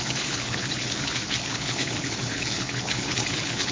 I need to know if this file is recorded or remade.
remade